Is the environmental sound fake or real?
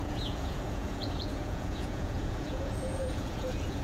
fake